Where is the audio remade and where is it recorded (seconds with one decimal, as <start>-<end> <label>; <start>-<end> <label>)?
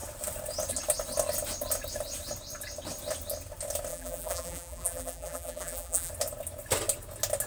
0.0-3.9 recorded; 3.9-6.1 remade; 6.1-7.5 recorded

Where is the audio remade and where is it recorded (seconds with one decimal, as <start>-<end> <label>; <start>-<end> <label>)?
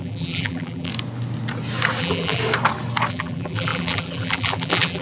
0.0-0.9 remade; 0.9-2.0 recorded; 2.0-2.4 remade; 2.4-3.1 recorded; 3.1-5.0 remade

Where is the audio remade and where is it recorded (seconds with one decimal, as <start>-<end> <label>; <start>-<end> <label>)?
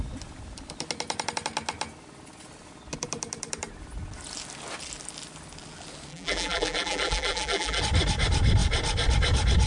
0.0-6.1 recorded; 6.1-7.8 remade; 7.8-9.7 recorded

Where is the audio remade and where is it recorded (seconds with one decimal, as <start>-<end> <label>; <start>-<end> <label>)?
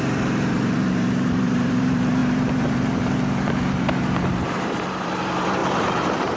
0.0-6.4 remade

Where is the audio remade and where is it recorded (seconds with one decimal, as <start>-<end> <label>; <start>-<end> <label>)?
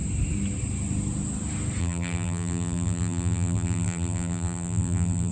0.0-1.8 recorded; 1.8-5.3 remade